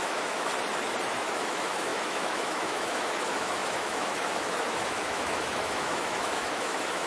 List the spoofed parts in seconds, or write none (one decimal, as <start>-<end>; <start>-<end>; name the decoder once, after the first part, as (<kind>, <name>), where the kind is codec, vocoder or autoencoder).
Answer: 0.0-0.5 (autoencoder, DAC-VAE); 1.1-7.1